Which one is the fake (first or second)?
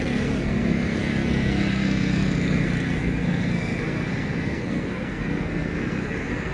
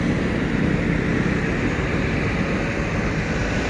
first